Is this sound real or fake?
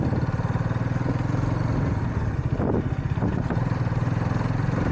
real